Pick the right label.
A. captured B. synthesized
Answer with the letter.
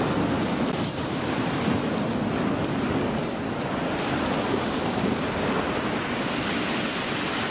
A